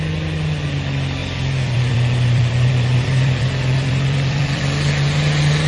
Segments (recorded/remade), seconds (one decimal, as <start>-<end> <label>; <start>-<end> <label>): 0.0-1.2 recorded; 1.2-4.6 remade; 4.6-5.7 recorded